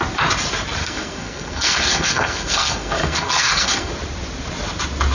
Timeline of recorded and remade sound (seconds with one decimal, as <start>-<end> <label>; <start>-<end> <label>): 0.0-0.8 recorded; 0.8-3.9 remade; 3.9-5.1 recorded